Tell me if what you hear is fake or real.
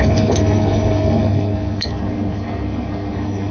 fake